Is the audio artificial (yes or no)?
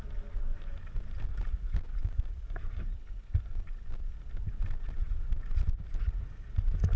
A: no